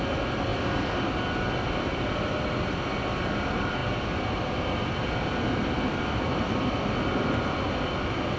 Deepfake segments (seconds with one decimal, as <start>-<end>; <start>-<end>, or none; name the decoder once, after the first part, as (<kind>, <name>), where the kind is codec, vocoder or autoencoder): none